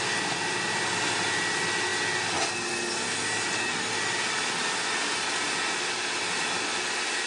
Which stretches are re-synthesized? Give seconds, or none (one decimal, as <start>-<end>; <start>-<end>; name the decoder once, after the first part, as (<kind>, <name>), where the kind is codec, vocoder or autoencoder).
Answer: none